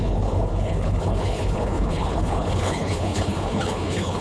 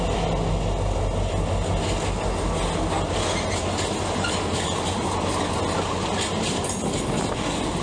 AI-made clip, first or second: first